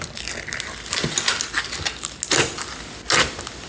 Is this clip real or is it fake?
real